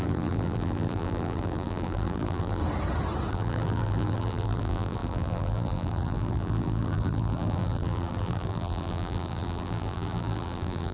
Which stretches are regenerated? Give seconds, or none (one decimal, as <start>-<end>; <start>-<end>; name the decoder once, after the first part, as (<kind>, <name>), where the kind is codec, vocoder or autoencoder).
0.0-2.6 (vocoder, BigVGAN v2); 3.3-10.9